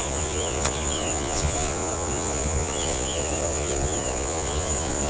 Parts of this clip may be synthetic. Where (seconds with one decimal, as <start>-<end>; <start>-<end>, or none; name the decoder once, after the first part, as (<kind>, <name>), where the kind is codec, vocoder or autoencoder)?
0.0-5.1 (vocoder, Vocos)